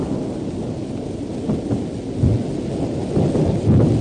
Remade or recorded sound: recorded